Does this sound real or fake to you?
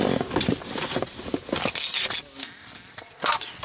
real